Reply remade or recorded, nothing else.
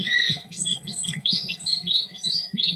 remade